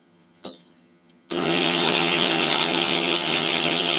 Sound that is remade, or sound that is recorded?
remade